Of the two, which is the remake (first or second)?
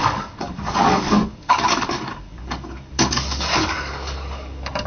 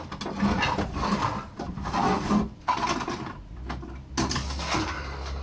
first